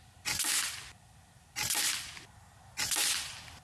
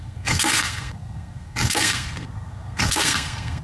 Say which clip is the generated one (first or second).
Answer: second